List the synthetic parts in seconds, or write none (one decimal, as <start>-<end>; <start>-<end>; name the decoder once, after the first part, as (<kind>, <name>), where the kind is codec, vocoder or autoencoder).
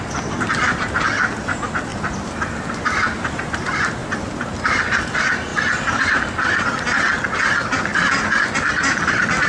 1.9-2.7 (vocoder, BigVGAN v2); 4.0-4.8